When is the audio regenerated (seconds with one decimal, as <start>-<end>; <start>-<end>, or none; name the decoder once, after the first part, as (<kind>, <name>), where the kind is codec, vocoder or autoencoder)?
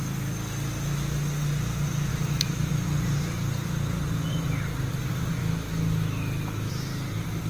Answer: 2.1-2.7 (autoencoder, DAC-VAE); 5.4-6.7